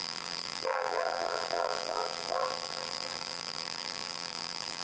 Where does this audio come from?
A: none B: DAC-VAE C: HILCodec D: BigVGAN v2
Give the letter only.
D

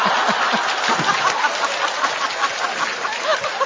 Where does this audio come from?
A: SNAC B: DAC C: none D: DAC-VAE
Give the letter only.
C